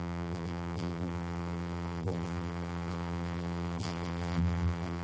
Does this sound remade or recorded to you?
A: remade